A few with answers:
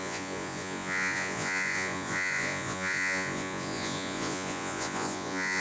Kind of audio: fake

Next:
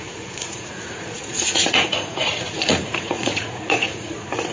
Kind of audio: fake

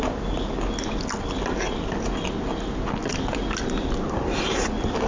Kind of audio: real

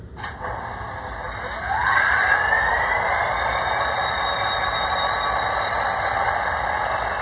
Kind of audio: real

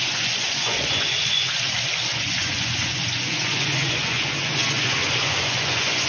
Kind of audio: fake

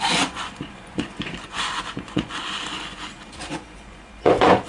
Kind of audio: fake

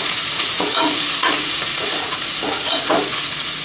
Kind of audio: fake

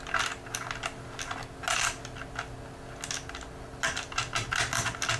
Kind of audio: real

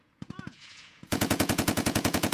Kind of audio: fake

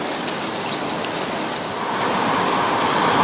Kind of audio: real